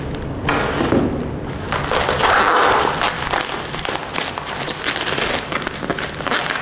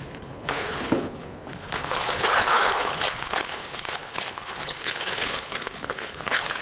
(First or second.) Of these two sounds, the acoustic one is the first